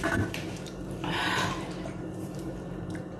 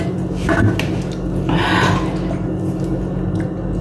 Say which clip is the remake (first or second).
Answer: first